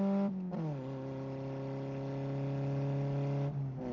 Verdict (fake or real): real